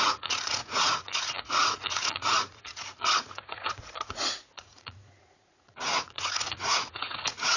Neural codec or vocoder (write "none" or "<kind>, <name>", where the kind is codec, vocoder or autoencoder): vocoder, Vocos